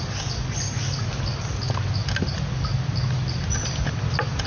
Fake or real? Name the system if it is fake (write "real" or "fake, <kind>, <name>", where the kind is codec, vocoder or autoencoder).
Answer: real